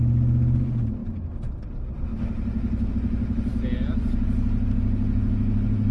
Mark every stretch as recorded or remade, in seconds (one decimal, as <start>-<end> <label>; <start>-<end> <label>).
0.0-5.9 recorded

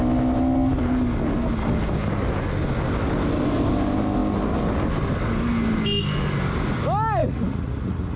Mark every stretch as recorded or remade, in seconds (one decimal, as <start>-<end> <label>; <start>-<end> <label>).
0.0-7.2 recorded; 7.2-8.2 remade

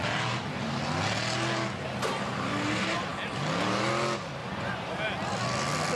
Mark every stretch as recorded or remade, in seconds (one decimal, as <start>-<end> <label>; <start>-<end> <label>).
0.0-4.4 recorded; 4.4-4.9 remade; 4.9-6.0 recorded

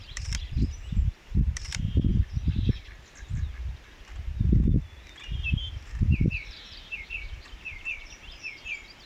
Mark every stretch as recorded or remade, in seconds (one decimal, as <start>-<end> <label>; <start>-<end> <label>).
0.0-2.1 remade; 2.1-5.5 recorded; 5.5-9.1 remade

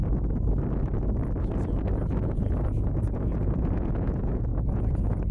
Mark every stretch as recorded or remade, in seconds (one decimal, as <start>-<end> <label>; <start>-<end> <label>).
0.0-2.2 recorded; 2.2-5.3 remade

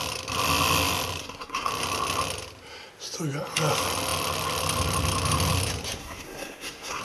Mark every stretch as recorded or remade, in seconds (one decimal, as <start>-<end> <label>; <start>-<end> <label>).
0.0-1.2 recorded; 1.2-1.7 remade; 1.7-6.0 recorded; 6.0-7.0 remade

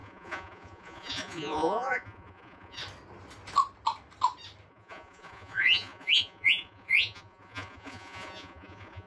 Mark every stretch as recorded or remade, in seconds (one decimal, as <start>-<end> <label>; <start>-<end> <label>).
0.0-2.8 remade; 2.8-4.7 recorded; 4.7-9.1 remade

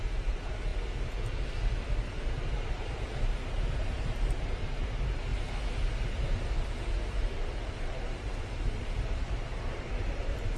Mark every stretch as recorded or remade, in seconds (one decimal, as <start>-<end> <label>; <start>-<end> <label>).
0.0-0.7 remade; 0.7-2.7 recorded; 2.7-5.3 remade; 5.3-7.0 recorded; 7.0-10.6 remade